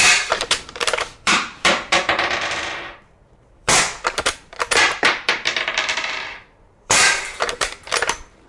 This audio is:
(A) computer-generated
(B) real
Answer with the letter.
A